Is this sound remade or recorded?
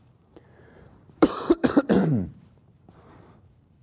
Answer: remade